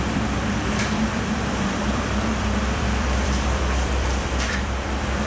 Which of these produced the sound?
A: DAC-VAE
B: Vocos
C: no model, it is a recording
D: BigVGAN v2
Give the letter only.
D